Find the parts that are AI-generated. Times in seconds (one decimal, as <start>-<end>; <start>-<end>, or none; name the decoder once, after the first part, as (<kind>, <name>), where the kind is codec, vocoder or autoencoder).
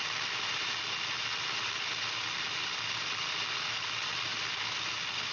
none